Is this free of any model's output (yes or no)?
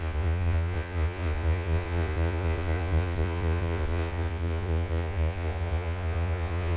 no